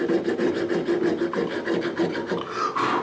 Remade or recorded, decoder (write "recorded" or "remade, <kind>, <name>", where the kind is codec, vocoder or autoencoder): recorded